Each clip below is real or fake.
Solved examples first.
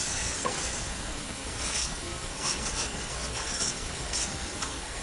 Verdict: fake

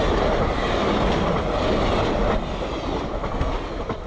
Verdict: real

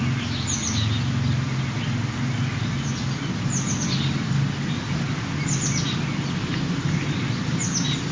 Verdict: real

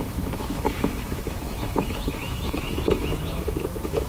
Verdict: fake